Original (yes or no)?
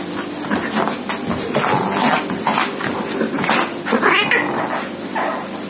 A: yes